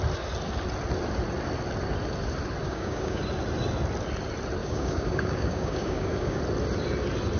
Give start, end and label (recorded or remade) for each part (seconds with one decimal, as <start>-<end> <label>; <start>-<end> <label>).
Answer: 0.0-2.6 recorded; 2.6-3.2 remade; 3.2-4.6 recorded; 4.6-6.4 remade; 6.4-7.4 recorded